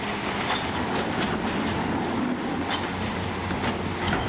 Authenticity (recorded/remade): recorded